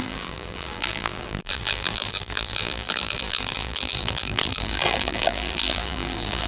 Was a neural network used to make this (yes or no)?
yes